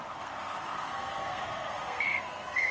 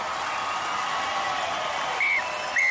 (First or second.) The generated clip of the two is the first